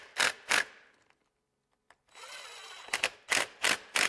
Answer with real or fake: real